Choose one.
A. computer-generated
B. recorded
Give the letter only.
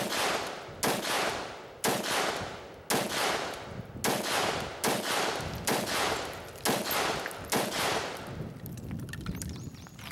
B